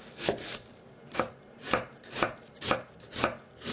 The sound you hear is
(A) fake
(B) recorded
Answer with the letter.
B